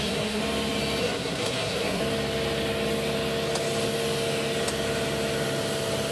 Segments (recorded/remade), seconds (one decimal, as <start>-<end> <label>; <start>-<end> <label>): 0.0-0.4 remade; 0.4-1.0 recorded; 1.0-2.0 remade; 2.0-6.1 recorded